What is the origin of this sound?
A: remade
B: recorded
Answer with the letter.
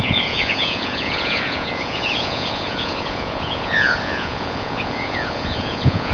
A